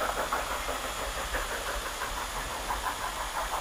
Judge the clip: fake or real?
real